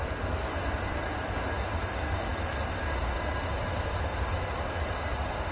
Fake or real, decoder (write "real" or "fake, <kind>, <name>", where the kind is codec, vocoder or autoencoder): real